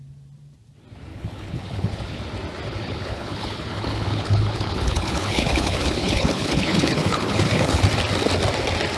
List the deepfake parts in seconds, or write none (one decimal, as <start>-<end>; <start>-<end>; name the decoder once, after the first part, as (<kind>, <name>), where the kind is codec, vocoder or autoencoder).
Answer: 1.1-2.2 (codec, HILCodec); 2.7-7.8